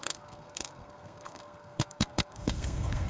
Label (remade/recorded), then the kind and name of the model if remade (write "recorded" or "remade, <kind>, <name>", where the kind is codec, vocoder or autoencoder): remade, codec, SNAC